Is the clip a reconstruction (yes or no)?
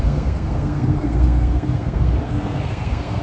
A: yes